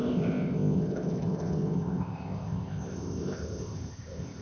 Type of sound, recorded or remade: remade